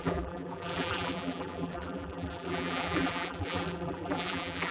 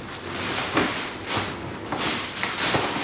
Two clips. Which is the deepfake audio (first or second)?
first